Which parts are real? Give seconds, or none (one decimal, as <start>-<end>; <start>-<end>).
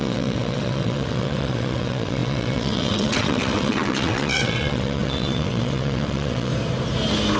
6.5-7.4